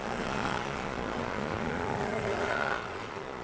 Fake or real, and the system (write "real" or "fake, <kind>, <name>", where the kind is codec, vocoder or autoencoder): fake, vocoder, Vocos